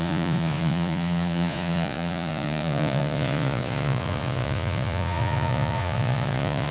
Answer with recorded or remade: remade